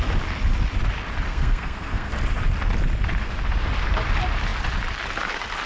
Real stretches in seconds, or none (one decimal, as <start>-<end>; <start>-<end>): 0.0-1.3; 2.1-5.7